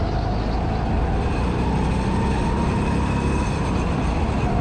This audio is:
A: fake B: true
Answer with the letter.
B